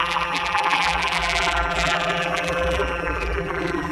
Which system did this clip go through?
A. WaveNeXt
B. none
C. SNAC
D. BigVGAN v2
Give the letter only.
D